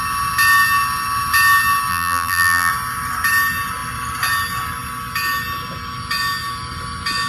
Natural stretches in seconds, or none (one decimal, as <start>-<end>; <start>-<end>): 0.0-1.9; 2.7-7.3

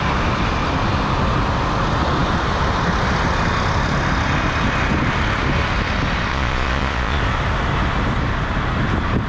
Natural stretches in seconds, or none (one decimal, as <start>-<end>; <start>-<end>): 0.0-6.3; 7.2-9.3

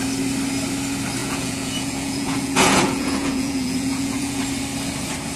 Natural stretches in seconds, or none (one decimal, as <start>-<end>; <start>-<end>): 0.0-1.2; 4.4-5.4

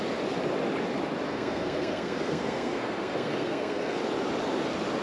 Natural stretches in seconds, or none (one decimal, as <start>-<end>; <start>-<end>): 0.0-1.3; 4.0-5.0

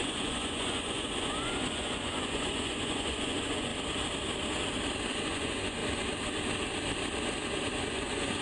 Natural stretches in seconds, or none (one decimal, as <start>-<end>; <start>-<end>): 3.7-5.1; 5.8-7.8

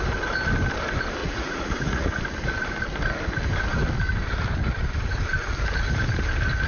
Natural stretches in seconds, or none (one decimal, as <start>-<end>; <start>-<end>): 0.0-1.2; 2.2-6.7

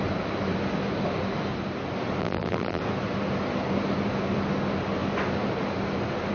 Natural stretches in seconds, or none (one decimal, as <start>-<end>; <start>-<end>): 0.0-2.2; 2.8-6.3

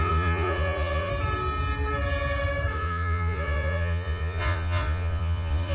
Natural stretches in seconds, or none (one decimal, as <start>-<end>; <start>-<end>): 1.1-2.7